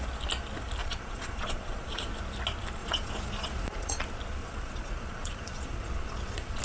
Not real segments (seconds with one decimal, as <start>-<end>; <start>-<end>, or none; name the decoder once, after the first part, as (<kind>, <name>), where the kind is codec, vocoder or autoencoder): 0.8-2.0 (vocoder, Vocos); 2.8-3.9; 4.4-6.6